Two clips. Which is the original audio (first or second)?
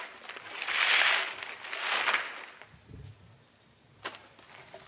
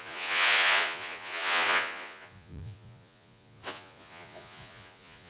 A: first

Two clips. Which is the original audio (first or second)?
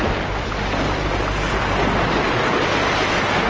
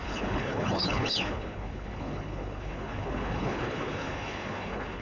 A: first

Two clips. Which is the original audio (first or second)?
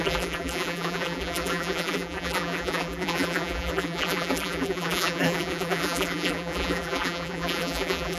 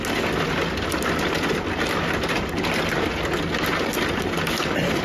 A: second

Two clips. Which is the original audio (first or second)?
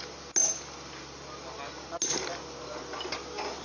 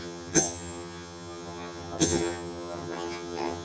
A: first